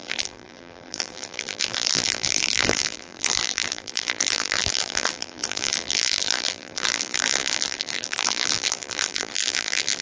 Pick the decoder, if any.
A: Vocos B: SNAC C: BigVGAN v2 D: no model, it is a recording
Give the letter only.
C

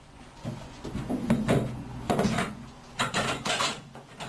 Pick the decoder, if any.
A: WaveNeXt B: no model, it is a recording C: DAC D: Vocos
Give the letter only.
D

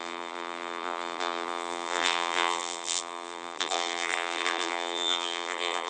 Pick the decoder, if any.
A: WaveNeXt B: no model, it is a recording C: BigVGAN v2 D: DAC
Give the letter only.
C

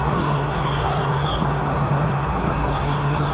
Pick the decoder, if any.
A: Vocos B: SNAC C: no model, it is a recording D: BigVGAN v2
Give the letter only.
B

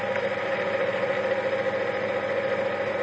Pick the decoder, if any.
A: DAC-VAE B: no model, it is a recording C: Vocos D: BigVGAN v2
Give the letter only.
B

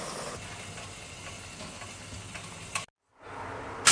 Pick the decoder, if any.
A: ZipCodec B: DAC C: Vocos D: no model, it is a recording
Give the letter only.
D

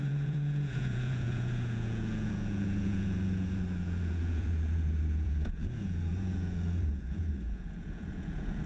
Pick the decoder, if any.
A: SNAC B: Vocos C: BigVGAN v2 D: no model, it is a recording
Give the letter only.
B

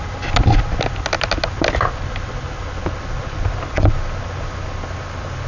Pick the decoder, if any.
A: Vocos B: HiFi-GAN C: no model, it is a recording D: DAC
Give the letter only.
C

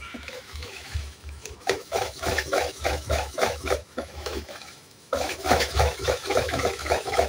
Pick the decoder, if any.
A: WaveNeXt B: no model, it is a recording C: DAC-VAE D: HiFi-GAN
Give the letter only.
C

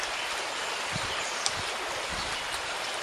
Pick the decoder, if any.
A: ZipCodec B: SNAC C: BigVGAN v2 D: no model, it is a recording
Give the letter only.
C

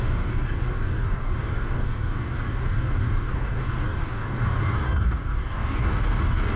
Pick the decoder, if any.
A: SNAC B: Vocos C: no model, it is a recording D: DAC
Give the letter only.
D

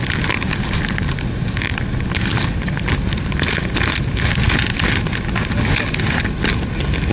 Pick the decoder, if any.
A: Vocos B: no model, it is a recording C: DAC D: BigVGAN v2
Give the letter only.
B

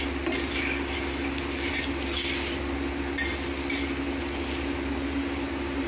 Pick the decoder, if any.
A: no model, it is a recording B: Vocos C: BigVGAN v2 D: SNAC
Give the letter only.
A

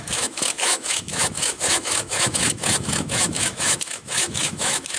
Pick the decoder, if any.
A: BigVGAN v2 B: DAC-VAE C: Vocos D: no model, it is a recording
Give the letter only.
B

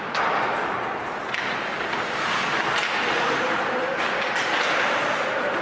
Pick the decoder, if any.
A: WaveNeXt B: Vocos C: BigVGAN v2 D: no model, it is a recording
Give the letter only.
D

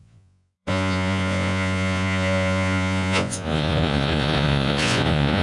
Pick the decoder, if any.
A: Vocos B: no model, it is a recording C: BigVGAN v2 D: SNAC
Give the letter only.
A